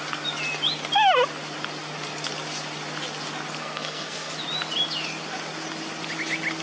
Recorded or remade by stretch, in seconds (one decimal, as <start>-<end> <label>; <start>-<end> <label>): 0.0-3.6 recorded; 3.6-4.3 remade; 4.3-6.6 recorded